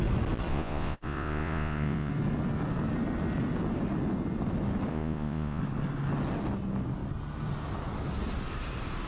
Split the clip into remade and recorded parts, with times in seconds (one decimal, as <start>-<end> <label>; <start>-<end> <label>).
0.0-0.5 recorded; 0.5-2.1 remade; 2.1-4.9 recorded; 4.9-5.6 remade; 5.6-9.1 recorded